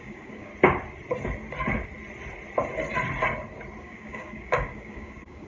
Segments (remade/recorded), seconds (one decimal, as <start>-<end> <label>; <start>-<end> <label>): 0.0-0.5 remade; 0.5-3.8 recorded; 3.8-5.5 remade